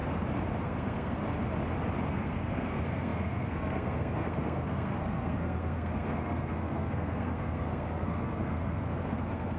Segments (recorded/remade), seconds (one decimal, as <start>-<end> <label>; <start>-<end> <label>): 0.0-0.6 recorded; 0.6-1.2 remade; 1.2-2.1 recorded; 2.1-9.6 remade